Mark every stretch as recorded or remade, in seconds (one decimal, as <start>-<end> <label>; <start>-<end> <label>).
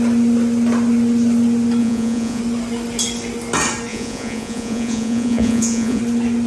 0.0-1.8 recorded; 1.8-2.4 remade; 2.4-3.9 recorded; 3.9-6.0 remade; 6.0-6.5 recorded